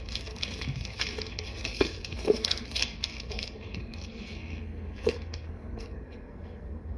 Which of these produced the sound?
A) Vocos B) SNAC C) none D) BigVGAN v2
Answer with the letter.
B